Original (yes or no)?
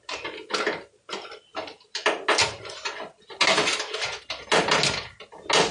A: yes